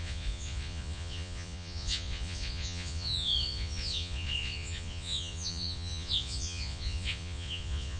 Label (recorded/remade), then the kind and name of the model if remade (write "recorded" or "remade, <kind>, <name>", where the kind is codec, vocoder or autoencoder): remade, vocoder, Vocos